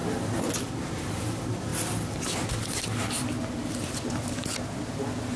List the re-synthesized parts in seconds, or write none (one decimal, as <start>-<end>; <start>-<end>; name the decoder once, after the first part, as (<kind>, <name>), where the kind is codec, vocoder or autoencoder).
none